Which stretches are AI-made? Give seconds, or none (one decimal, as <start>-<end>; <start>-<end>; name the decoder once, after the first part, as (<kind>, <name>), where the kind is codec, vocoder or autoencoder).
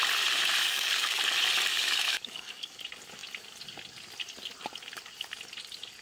0.6-1.2 (codec, DAC); 1.7-2.8